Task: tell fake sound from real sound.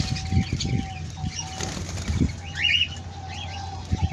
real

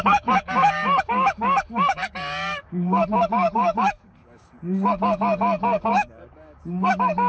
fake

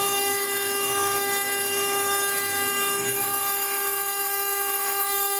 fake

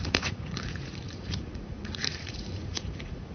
fake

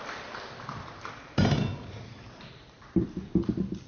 fake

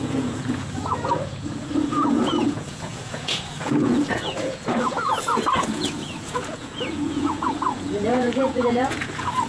fake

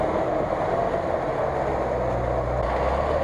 real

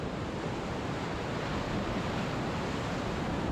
real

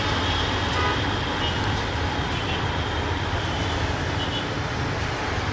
real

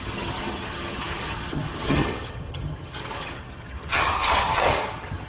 fake